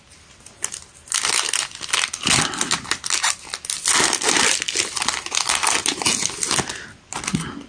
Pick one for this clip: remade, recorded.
recorded